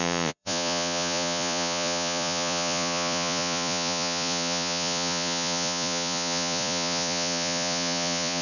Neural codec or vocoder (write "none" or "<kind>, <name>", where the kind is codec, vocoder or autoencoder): vocoder, Vocos